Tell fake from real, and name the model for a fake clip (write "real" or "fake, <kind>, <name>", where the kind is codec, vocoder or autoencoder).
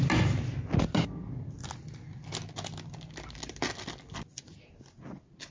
real